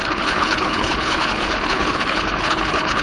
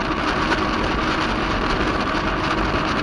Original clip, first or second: second